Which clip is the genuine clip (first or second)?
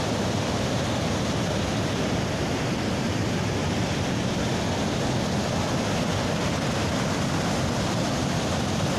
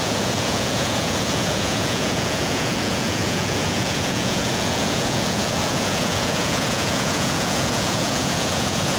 first